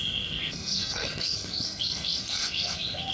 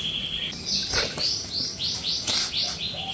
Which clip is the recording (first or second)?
second